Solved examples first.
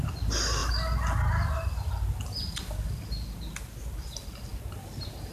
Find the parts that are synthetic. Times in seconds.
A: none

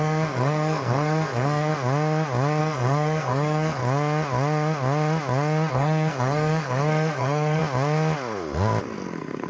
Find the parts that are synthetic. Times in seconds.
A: 0.0-1.7 (codec, SNAC); 2.6-3.8; 5.7-7.6; 8.8-9.5